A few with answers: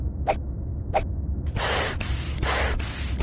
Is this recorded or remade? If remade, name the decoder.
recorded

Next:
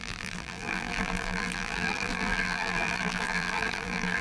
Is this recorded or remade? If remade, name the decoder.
remade, vocoder, BigVGAN v2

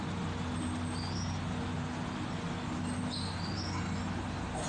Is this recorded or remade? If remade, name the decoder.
recorded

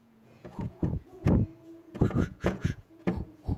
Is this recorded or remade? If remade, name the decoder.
remade, vocoder, Vocos